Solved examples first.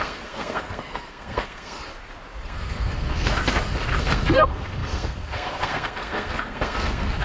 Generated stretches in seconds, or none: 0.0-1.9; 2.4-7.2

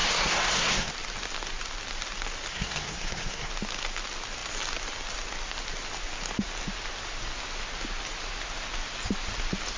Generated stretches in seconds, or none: 0.0-0.9; 2.5-3.5

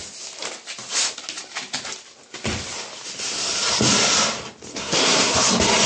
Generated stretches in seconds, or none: 4.7-5.3

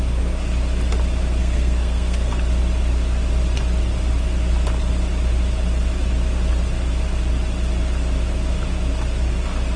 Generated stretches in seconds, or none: 1.4-2.4